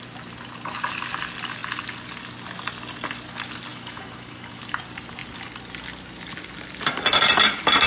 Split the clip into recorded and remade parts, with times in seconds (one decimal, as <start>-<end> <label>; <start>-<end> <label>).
0.0-3.7 recorded; 3.7-4.6 remade; 4.6-7.9 recorded